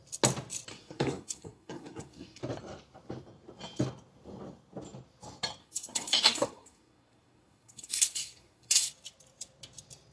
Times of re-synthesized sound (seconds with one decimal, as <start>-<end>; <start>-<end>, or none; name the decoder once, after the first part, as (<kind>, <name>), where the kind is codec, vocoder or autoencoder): 0.7-2.4 (codec, SNAC); 5.6-8.9